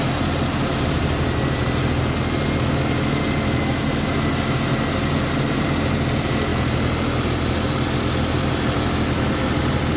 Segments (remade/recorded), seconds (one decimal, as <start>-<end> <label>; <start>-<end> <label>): 0.0-10.0 recorded